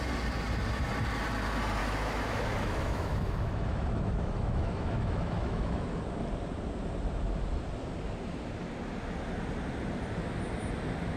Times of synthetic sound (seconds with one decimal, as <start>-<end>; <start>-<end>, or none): 1.8-6.0